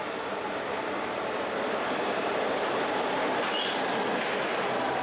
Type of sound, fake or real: real